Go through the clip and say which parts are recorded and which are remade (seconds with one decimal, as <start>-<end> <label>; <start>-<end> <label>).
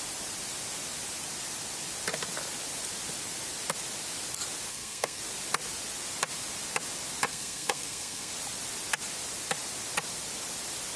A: 0.0-4.7 recorded; 4.7-5.2 remade; 5.2-7.3 recorded; 7.3-8.3 remade; 8.3-11.0 recorded